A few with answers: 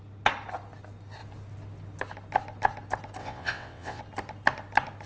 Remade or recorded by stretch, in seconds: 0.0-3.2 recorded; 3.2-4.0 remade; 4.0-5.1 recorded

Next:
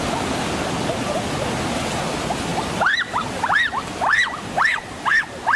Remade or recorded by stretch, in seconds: 0.0-5.6 recorded

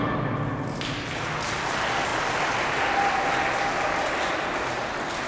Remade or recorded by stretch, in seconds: 0.0-5.3 recorded